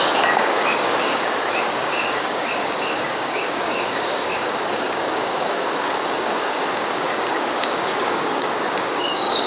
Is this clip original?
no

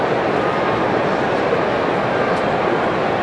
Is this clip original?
yes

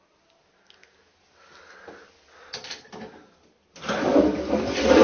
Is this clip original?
yes